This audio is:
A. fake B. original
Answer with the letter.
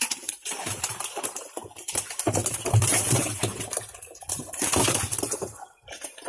A